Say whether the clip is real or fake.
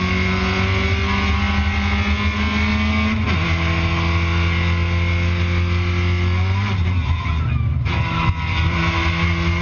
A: real